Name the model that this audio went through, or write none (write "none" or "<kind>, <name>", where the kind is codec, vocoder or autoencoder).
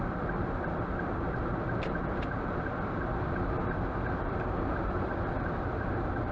vocoder, BigVGAN v2